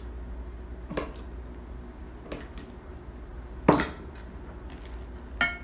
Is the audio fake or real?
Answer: real